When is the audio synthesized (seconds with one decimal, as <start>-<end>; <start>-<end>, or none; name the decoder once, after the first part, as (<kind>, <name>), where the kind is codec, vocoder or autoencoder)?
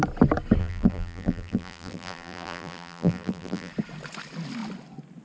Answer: 0.6-3.7 (vocoder, BigVGAN v2)